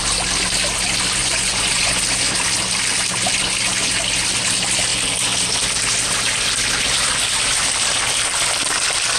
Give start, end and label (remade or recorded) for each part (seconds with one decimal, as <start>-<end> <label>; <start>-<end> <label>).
0.0-1.2 recorded; 1.2-2.0 remade; 2.0-9.2 recorded

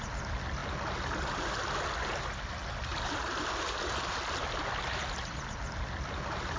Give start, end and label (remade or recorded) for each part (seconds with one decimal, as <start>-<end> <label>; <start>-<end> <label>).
0.0-2.9 recorded; 2.9-6.6 remade